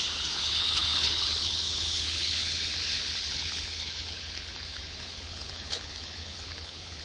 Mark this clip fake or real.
fake